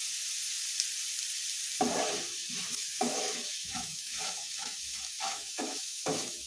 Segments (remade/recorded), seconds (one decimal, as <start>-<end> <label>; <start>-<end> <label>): 0.0-2.4 recorded; 2.4-6.5 remade